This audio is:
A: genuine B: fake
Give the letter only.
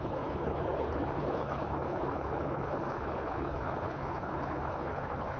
B